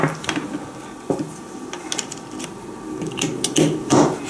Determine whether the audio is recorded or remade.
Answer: recorded